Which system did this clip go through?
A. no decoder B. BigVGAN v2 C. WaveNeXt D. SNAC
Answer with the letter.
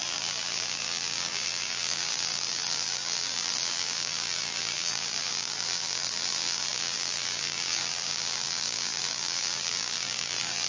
B